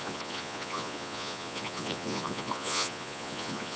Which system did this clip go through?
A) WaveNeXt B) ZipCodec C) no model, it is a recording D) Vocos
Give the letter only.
D